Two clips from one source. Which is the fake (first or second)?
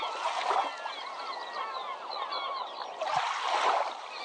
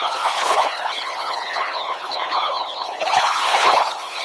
second